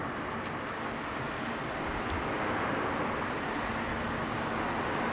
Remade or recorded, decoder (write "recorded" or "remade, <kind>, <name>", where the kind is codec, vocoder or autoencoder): recorded